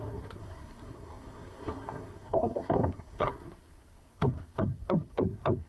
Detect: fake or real fake